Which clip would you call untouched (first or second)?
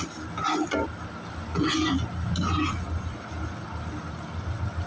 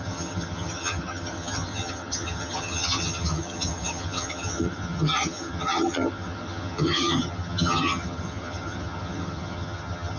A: first